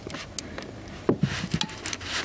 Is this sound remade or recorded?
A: recorded